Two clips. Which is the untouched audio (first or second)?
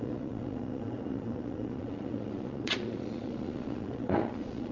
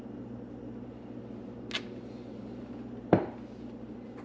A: second